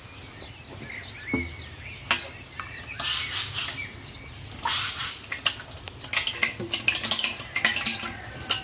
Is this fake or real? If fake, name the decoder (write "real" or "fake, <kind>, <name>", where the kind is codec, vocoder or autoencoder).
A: real